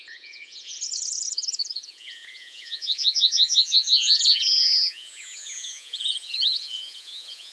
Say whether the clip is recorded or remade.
remade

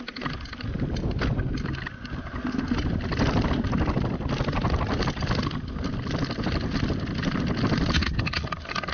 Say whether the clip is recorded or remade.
recorded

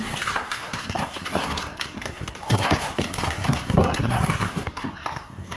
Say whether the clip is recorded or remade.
remade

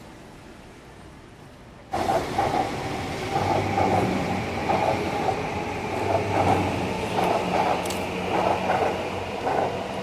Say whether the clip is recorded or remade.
recorded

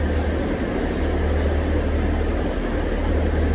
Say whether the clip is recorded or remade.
recorded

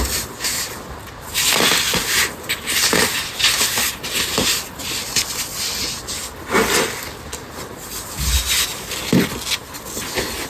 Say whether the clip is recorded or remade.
recorded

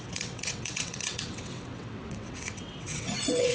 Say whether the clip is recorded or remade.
remade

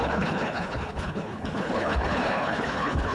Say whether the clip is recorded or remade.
remade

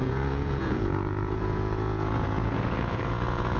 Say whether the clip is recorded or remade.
remade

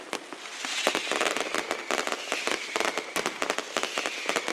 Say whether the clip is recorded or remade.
recorded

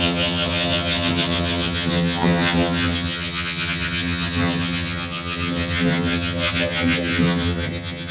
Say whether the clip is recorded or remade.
remade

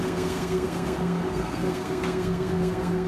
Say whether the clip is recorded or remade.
remade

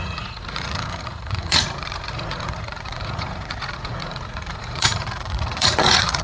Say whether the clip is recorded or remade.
remade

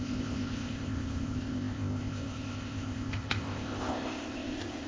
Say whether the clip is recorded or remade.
remade